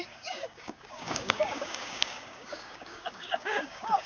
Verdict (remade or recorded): remade